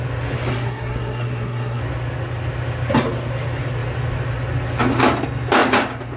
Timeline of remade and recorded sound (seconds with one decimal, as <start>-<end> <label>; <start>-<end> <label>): 0.0-0.5 recorded; 0.5-1.8 remade; 1.8-6.2 recorded